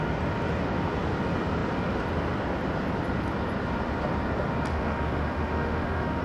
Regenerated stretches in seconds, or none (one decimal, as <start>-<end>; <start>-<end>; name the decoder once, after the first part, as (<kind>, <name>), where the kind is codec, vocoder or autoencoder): 4.7-6.2 (autoencoder, DAC-VAE)